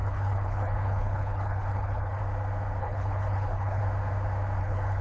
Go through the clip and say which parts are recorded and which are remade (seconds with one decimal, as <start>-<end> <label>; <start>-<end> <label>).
0.0-2.2 remade; 2.2-2.8 recorded; 2.8-3.8 remade; 3.8-4.6 recorded; 4.6-5.0 remade

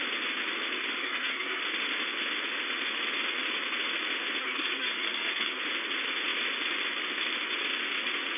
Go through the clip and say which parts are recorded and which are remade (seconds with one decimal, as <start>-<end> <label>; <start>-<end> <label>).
0.0-1.0 recorded; 1.0-1.6 remade; 1.6-4.4 recorded; 4.4-5.6 remade; 5.6-8.4 recorded

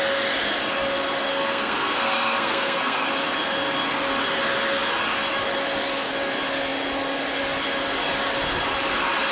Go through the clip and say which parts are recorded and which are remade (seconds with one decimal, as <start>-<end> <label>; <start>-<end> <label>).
0.0-1.3 recorded; 1.3-3.1 remade; 3.1-9.3 recorded

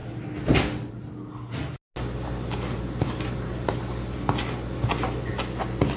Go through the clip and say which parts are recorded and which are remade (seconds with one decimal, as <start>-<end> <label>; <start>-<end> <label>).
0.0-6.0 recorded